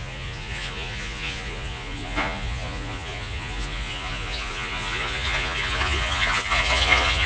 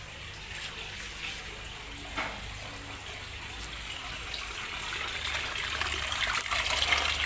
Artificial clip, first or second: first